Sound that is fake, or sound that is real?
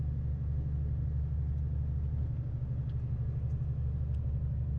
real